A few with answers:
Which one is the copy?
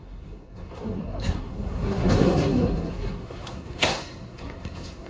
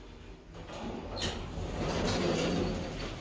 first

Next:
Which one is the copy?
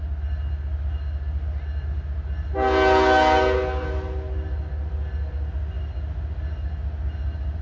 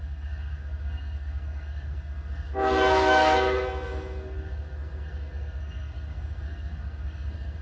second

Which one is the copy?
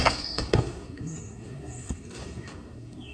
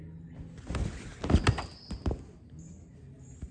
first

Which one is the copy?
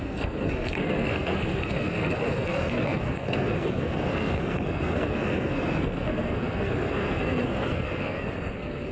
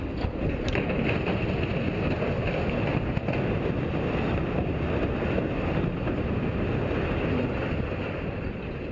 first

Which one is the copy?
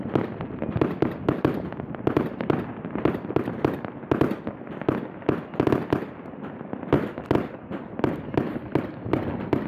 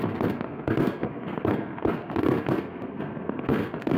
second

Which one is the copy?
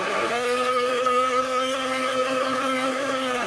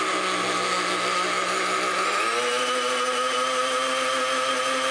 first